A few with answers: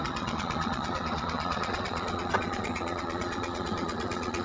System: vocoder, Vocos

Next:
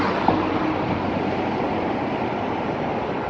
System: none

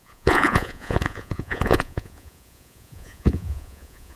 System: vocoder, Vocos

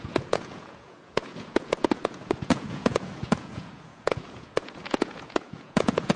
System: vocoder, Vocos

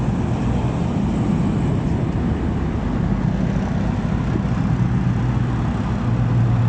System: none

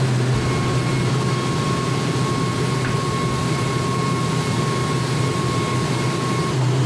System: none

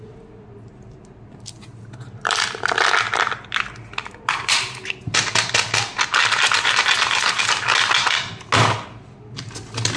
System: none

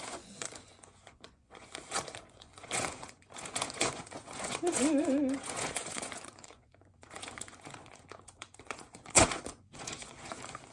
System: vocoder, Vocos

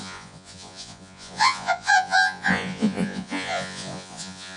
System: vocoder, Vocos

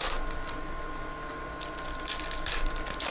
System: none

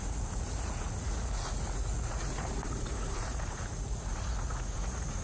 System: vocoder, Vocos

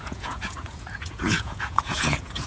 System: vocoder, Vocos